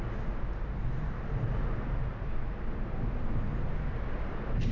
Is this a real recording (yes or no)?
yes